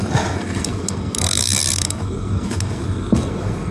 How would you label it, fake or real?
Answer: fake